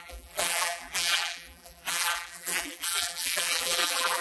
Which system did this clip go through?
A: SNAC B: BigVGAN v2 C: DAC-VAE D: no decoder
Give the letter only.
B